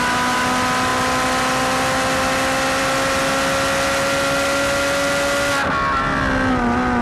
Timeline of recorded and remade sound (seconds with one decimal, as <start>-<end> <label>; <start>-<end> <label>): 0.0-7.0 recorded